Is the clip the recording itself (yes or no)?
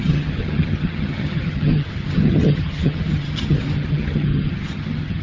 no